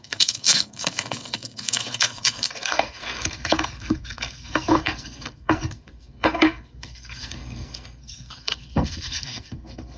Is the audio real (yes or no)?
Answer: no